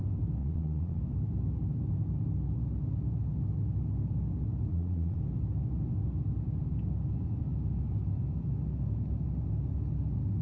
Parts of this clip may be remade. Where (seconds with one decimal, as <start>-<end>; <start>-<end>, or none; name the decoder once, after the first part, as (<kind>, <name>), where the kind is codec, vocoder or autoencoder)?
0.4-1.0 (vocoder, Vocos); 4.7-5.2